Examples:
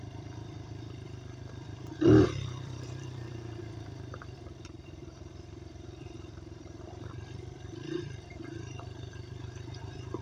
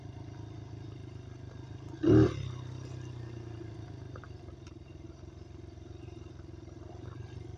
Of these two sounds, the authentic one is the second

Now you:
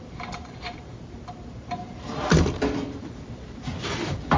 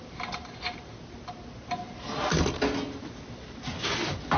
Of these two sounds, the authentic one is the second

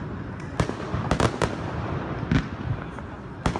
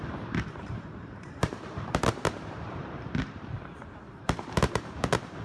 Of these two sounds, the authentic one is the first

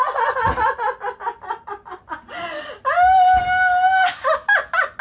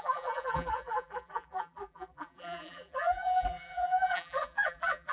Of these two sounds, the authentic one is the first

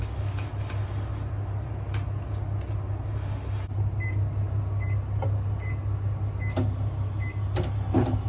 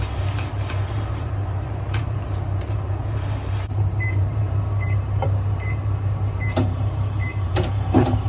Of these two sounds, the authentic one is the first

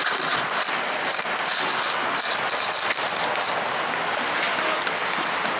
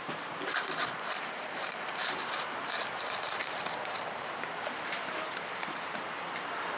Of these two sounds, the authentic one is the first